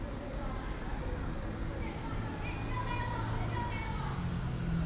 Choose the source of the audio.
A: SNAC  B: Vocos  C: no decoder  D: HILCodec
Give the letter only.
C